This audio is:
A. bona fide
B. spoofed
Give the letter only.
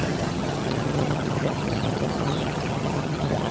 B